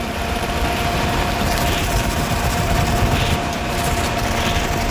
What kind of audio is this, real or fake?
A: fake